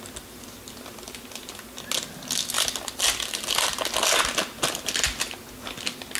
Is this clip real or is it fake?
real